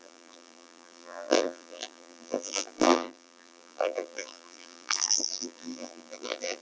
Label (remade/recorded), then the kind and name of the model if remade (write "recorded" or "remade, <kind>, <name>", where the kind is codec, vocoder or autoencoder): remade, vocoder, BigVGAN v2